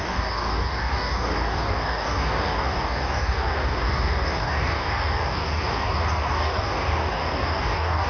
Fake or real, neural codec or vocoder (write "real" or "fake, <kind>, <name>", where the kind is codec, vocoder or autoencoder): fake, codec, DAC